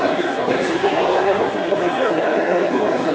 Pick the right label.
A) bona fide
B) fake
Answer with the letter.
B